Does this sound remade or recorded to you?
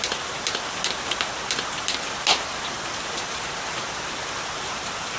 recorded